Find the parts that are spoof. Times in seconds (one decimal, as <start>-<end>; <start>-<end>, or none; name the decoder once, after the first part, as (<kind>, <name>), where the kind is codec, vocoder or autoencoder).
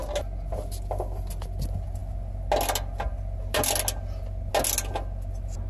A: none